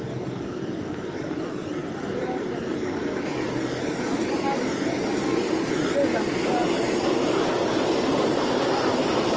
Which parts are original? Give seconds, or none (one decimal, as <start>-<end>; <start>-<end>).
0.0-1.8; 2.8-6.6